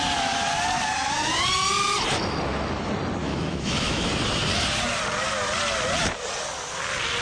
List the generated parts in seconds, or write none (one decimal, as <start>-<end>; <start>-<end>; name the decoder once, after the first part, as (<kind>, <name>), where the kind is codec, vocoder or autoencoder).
3.2-4.1 (autoencoder, DAC-VAE)